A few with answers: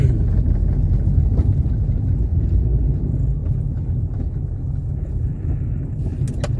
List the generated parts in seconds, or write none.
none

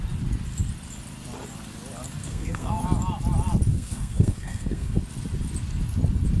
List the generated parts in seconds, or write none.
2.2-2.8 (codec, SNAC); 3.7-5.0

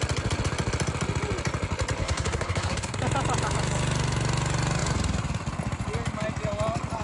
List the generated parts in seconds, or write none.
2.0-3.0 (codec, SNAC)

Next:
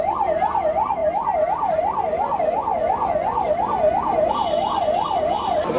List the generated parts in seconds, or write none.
none

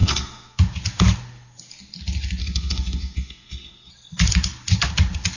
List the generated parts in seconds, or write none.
0.0-0.6 (codec, SNAC); 2.4-3.9

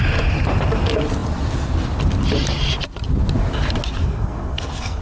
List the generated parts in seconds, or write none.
4.0-5.0 (codec, SNAC)

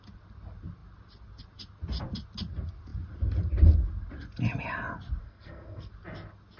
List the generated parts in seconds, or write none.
5.2-5.9 (codec, SNAC)

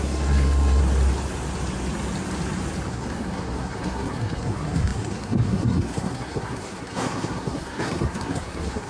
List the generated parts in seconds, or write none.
0.0-0.8 (codec, SNAC); 2.9-8.9